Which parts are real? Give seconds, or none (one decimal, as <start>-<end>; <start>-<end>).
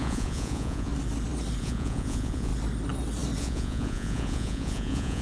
0.9-1.6; 2.5-3.4